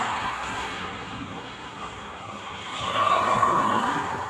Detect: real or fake fake